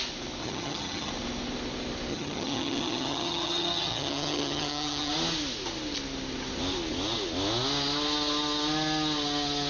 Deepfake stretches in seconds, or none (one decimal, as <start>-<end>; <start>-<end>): 0.4-1.1; 2.1-5.1

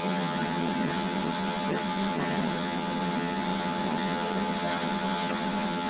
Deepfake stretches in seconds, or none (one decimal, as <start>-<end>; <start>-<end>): 0.0-5.9

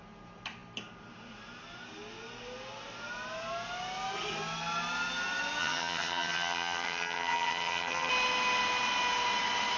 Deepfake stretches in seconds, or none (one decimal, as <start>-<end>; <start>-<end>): 5.6-8.1

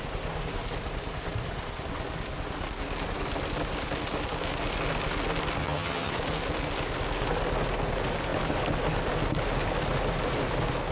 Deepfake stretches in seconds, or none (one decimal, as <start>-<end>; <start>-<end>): 5.6-6.1